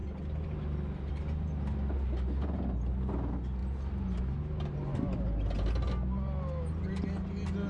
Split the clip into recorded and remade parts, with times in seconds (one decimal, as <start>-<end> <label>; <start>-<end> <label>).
0.0-7.7 recorded